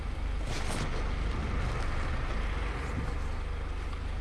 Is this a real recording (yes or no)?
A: yes